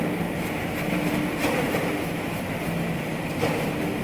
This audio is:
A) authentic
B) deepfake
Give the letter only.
A